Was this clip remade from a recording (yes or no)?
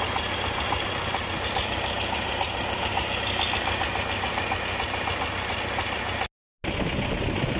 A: no